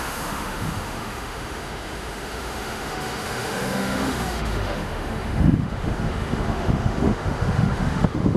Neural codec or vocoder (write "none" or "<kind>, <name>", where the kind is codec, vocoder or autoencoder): autoencoder, DAC-VAE